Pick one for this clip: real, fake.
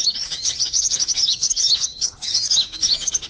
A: fake